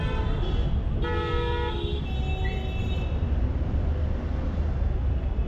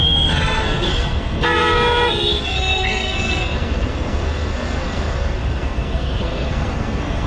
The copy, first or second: second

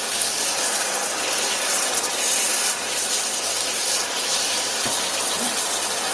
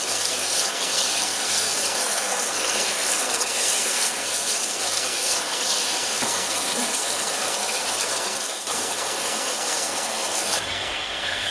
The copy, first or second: second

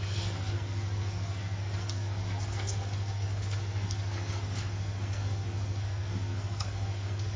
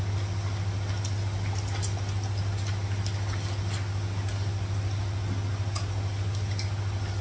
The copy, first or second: first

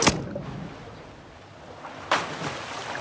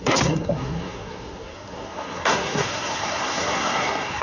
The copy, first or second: second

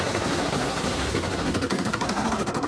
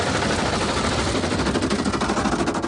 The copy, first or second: first